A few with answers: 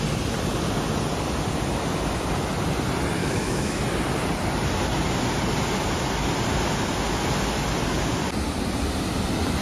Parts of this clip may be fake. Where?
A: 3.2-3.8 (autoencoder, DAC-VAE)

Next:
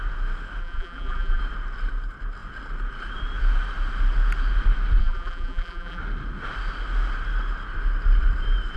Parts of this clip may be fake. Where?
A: 0.6-1.4 (vocoder, BigVGAN v2); 5.0-6.0

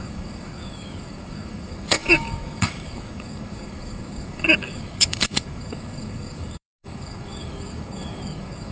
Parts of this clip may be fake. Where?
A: 0.0-8.7 (codec, DAC)

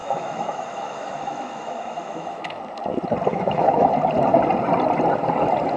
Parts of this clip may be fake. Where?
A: 0.0-2.6 (autoencoder, DAC-VAE); 3.3-3.9

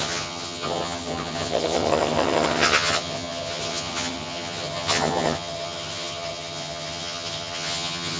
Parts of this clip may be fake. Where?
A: 0.0-8.2 (vocoder, HiFi-GAN)

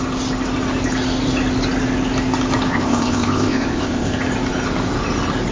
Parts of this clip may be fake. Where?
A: 2.7-4.2 (codec, ZipCodec)